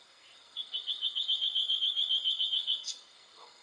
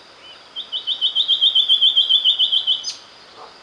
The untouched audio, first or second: second